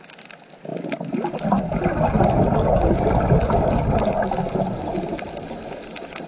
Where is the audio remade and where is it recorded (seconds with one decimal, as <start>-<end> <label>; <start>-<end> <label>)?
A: 0.0-6.3 recorded

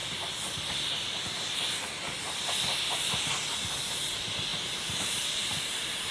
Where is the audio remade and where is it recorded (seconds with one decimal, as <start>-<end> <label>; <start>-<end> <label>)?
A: 0.0-4.5 recorded; 4.5-6.1 remade

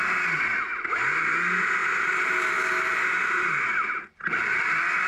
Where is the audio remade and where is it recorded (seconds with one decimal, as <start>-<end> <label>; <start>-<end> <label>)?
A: 0.0-1.8 recorded; 1.8-4.0 remade; 4.0-5.1 recorded

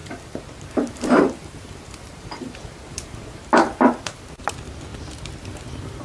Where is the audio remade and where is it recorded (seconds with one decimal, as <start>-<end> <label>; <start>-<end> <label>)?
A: 0.0-3.5 remade; 3.5-6.0 recorded

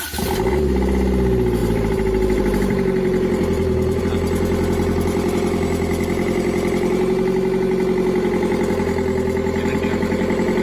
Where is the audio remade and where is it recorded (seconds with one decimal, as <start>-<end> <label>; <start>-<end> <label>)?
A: 0.0-1.6 recorded; 1.6-4.0 remade; 4.0-10.6 recorded

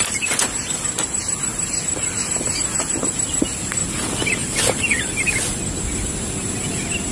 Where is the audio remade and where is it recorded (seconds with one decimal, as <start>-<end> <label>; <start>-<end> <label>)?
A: 0.0-4.4 recorded; 4.4-5.6 remade; 5.6-7.1 recorded

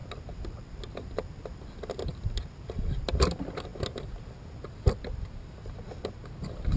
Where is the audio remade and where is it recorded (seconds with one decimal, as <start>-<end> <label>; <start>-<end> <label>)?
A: 0.0-6.8 recorded

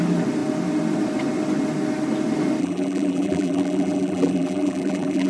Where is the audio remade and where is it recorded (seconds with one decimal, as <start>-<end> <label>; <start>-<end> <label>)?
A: 0.0-2.6 recorded; 2.6-5.3 remade